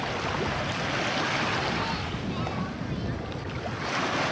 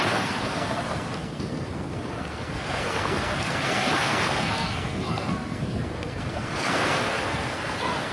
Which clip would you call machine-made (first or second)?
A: second